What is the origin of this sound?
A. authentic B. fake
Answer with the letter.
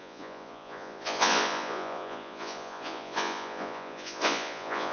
B